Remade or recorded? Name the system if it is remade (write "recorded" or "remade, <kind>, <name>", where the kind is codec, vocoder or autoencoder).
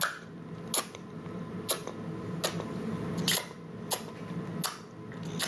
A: recorded